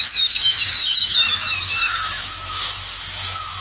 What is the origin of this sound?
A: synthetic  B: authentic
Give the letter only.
A